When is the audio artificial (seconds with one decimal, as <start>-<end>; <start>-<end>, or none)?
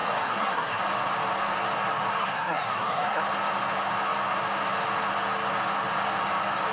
0.0-0.8; 2.2-3.2